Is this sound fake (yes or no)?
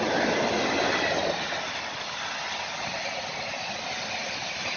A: no